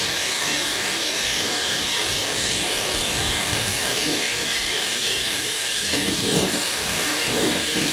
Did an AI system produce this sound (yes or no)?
yes